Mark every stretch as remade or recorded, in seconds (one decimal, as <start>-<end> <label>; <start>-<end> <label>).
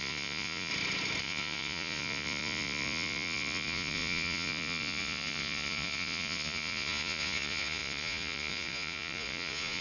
0.0-0.7 remade; 0.7-1.2 recorded; 1.2-9.8 remade